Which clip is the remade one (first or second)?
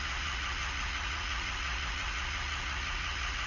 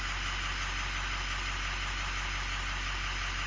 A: first